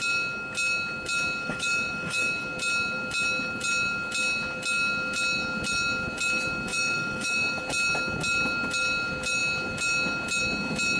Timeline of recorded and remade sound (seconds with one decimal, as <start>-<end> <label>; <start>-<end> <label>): 0.0-1.4 recorded; 1.4-2.3 remade; 2.3-6.7 recorded; 6.7-7.6 remade; 7.6-11.0 recorded